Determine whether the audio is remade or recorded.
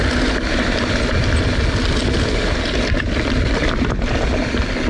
recorded